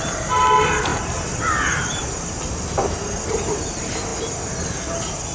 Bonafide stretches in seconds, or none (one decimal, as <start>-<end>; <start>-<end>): 0.0-0.9; 3.6-5.3